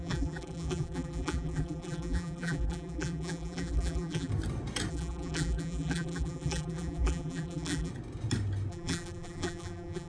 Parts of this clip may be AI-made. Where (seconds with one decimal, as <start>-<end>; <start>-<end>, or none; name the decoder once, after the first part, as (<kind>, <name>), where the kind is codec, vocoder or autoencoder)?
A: 0.0-4.3 (vocoder, BigVGAN v2); 4.9-7.9; 8.7-10.1